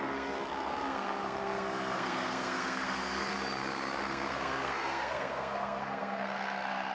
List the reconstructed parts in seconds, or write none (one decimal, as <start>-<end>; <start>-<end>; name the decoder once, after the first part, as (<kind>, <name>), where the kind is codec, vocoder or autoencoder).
0.0-3.3 (codec, SNAC); 4.0-6.9